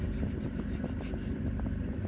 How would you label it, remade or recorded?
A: recorded